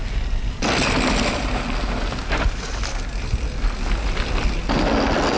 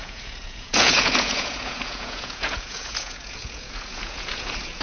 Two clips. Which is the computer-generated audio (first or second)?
second